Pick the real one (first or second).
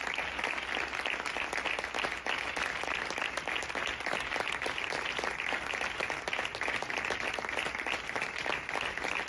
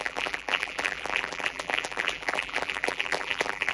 first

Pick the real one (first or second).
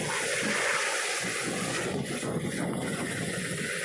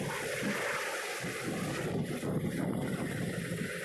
second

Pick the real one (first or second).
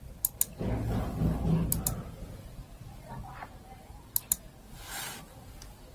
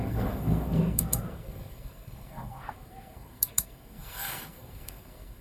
first